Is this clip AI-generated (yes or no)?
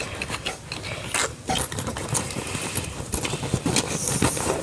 no